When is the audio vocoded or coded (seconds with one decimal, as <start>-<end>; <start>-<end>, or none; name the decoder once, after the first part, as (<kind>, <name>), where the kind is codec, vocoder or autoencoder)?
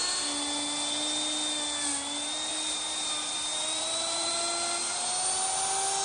2.5-4.4 (vocoder, BigVGAN v2)